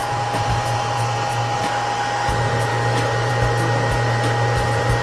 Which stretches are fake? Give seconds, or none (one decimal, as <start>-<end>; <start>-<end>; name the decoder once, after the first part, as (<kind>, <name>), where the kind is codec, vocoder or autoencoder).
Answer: 2.7-3.3 (codec, DAC)